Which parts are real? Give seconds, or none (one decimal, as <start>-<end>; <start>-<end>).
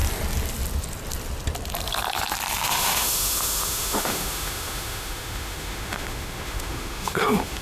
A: 0.0-2.7